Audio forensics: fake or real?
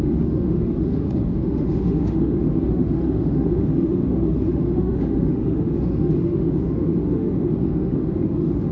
fake